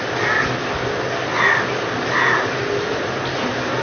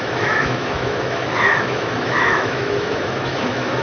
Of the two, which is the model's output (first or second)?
second